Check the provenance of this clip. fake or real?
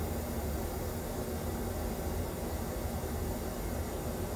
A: real